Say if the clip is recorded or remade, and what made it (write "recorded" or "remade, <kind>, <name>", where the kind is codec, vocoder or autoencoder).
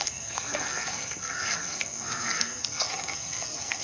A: remade, codec, SNAC